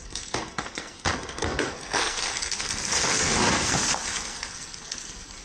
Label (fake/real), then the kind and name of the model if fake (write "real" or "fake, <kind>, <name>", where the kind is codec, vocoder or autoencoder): fake, codec, SNAC